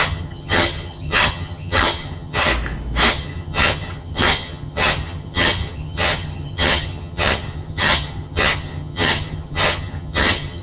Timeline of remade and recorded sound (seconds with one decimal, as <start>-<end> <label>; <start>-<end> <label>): 0.0-2.5 remade; 2.5-3.1 recorded; 3.1-10.6 remade